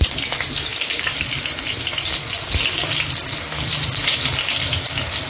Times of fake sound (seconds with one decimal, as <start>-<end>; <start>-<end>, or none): 0.7-1.7; 3.7-4.3